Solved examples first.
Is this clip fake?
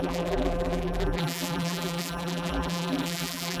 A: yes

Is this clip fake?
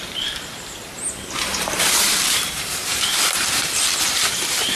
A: yes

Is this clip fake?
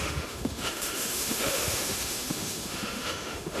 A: yes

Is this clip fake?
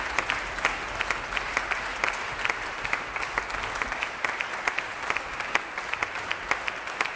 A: no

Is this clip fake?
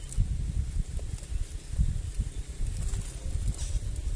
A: no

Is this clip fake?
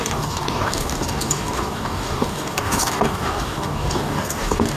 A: yes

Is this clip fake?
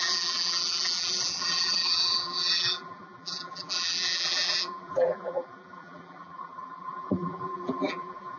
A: yes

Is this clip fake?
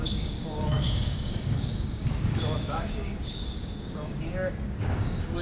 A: yes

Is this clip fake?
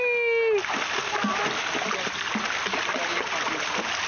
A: no